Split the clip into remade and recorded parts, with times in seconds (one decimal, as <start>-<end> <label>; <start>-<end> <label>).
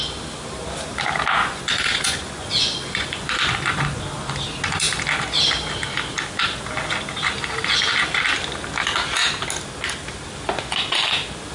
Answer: 0.0-1.4 recorded; 1.4-4.0 remade; 4.0-11.5 recorded